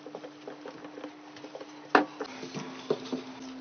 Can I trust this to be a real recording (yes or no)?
yes